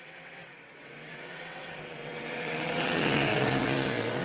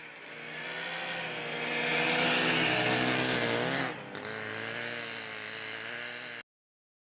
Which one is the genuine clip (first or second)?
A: second